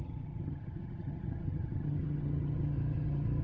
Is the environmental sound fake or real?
fake